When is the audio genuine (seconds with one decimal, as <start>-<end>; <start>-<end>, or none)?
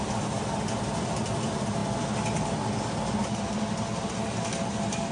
0.0-5.1